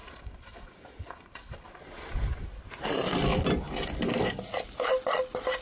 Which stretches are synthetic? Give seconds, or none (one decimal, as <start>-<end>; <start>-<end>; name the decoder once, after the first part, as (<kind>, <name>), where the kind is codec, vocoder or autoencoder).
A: 0.0-2.6 (vocoder, Vocos)